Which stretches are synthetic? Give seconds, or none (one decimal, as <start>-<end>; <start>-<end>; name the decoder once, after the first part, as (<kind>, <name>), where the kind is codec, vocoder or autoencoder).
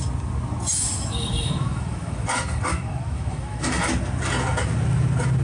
0.7-3.9 (autoencoder, DAC-VAE)